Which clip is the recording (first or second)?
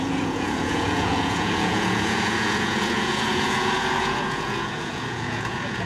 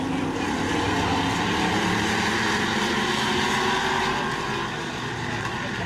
second